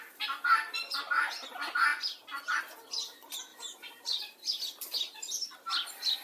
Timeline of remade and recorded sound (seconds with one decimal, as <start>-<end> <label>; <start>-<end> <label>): 0.0-3.5 recorded; 3.5-4.2 remade; 4.2-6.2 recorded